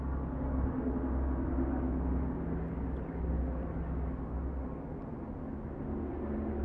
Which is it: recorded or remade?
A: recorded